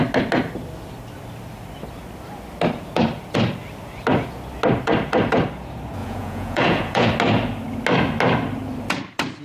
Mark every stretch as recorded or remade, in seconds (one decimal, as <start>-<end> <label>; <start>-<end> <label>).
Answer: 0.0-6.0 recorded; 6.0-7.1 remade; 7.1-9.4 recorded

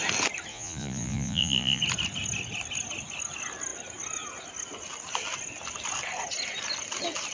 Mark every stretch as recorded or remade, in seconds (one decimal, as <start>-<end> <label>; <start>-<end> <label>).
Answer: 0.0-0.5 recorded; 0.5-1.8 remade; 1.8-7.3 recorded

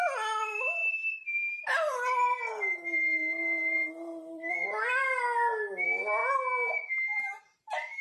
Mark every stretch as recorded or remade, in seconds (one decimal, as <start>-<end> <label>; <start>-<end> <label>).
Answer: 0.0-8.0 recorded

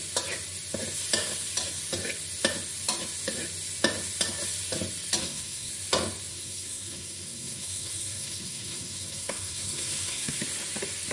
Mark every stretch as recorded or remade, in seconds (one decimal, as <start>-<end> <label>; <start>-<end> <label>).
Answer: 0.0-5.2 recorded; 5.2-5.7 remade; 5.7-6.3 recorded; 6.3-10.4 remade; 10.4-11.1 recorded

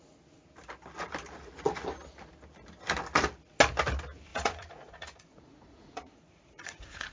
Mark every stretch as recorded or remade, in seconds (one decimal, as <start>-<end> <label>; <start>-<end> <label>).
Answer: 0.0-4.3 recorded; 4.3-7.1 remade